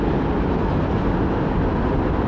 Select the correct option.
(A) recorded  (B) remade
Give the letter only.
A